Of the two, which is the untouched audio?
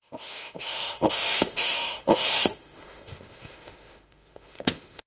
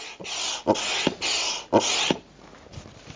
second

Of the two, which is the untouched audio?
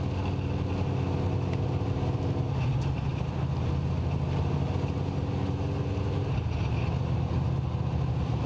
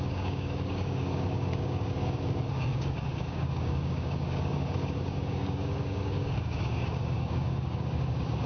first